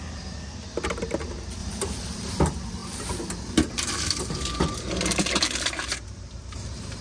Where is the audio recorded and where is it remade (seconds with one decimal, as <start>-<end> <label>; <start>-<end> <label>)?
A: 0.0-7.0 remade